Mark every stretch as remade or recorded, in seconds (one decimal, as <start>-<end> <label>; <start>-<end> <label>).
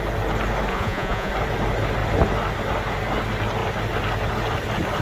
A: 0.0-0.7 recorded; 0.7-1.3 remade; 1.3-5.0 recorded